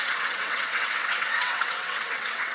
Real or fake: fake